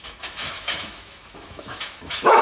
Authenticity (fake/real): fake